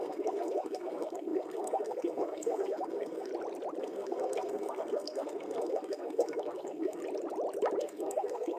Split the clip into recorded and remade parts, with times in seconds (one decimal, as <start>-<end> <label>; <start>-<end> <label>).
0.0-3.3 remade; 3.3-3.8 recorded; 3.8-7.0 remade; 7.0-7.8 recorded; 7.8-8.6 remade